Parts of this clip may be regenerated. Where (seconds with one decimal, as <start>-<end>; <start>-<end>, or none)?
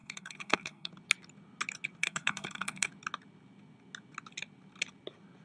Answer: 0.0-0.9; 2.0-2.9